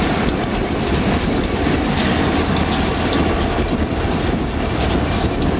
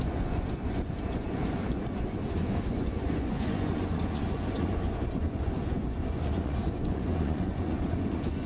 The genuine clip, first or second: first